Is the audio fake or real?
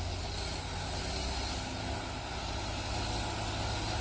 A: real